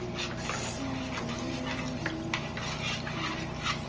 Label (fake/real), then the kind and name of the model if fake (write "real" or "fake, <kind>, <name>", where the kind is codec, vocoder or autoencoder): real